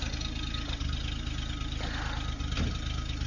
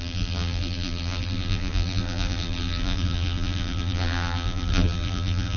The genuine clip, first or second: first